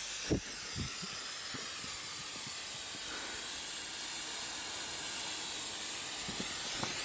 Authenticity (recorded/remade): recorded